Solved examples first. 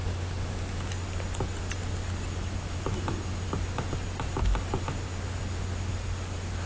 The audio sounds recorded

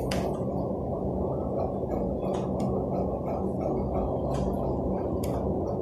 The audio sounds remade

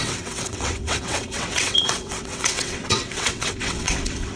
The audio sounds remade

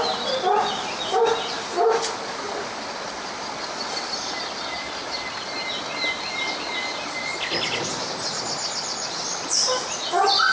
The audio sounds recorded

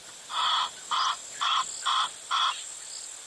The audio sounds recorded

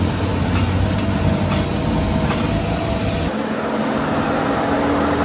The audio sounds recorded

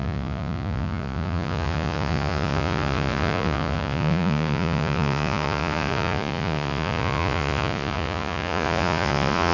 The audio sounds remade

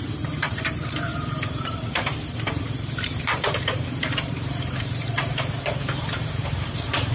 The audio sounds remade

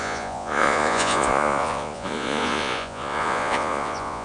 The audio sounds remade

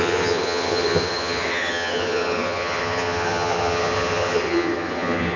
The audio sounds remade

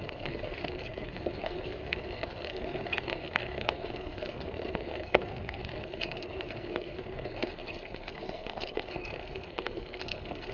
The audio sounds remade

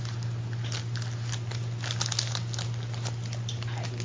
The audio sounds recorded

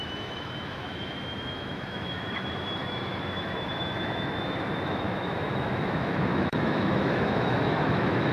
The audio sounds remade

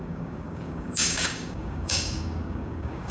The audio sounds remade